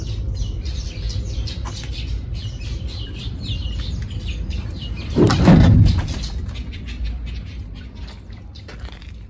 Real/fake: real